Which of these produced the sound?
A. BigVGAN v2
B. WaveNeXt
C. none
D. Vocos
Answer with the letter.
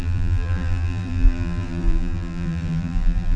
A